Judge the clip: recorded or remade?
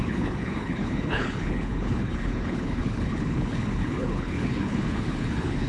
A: remade